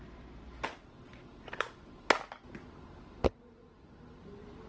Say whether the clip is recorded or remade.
recorded